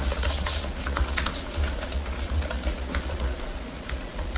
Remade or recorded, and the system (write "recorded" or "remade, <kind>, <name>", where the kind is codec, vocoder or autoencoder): remade, vocoder, Vocos